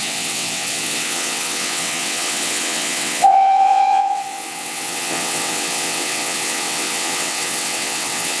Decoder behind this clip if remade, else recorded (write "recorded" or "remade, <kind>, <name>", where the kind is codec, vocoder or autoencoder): remade, vocoder, WaveNeXt